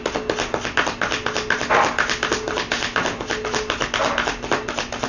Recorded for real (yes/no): yes